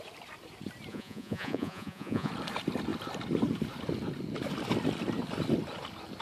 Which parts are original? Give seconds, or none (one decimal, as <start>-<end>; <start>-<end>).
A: 0.0-0.9; 2.3-6.2